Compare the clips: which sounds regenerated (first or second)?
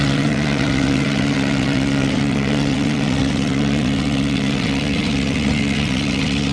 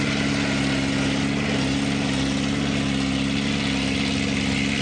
first